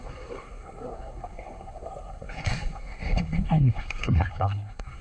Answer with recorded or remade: remade